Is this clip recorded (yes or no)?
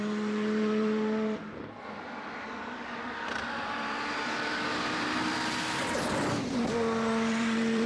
no